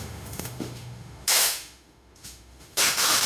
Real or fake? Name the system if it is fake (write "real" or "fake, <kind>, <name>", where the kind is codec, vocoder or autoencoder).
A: fake, autoencoder, DAC-VAE